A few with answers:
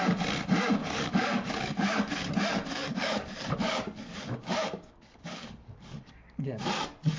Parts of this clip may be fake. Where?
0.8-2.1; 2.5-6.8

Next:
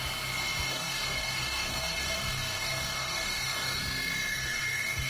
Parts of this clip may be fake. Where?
0.7-3.8; 4.3-5.1

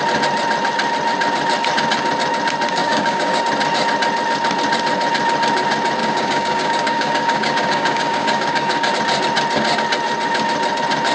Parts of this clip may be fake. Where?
2.8-3.4; 6.0-8.9

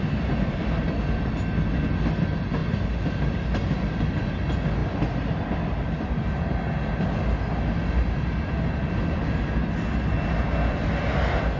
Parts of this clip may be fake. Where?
none

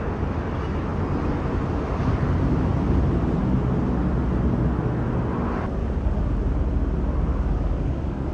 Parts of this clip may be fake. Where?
5.8-6.4; 7.3-8.3

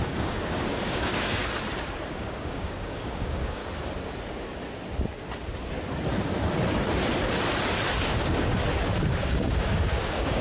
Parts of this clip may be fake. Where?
0.0-1.4; 2.1-3.6; 8.1-8.6; 9.2-10.4

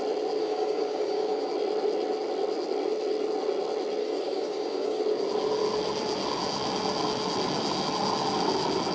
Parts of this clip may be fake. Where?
0.4-1.5; 4.0-5.0

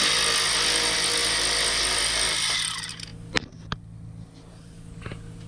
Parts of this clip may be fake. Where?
none